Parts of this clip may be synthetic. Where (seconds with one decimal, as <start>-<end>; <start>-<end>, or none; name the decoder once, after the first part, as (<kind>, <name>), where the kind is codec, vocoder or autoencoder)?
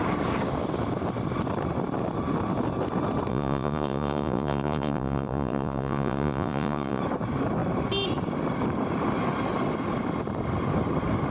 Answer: 3.3-7.0 (vocoder, Vocos)